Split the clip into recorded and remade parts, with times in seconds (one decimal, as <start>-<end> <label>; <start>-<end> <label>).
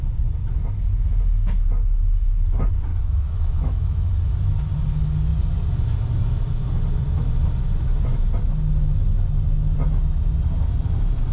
0.0-2.9 recorded; 2.9-4.1 remade; 4.1-11.3 recorded